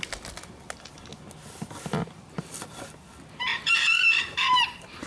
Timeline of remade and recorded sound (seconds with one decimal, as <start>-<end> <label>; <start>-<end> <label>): 0.0-3.5 recorded; 3.5-5.1 remade